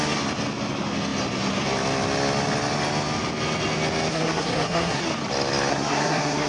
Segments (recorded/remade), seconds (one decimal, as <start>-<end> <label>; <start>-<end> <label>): 0.0-4.1 recorded; 4.1-5.0 remade; 5.0-5.7 recorded; 5.7-6.5 remade